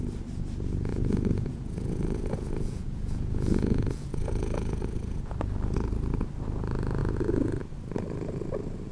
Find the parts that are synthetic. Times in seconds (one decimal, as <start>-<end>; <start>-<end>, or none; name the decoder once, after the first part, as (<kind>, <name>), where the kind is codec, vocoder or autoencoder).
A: 0.9-5.3 (vocoder, Vocos); 7.0-7.6